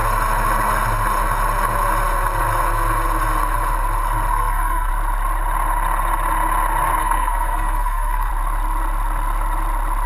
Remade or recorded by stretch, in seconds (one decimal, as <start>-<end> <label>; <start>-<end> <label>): 0.0-4.3 recorded; 4.3-4.9 remade; 4.9-7.0 recorded; 7.0-8.3 remade; 8.3-10.1 recorded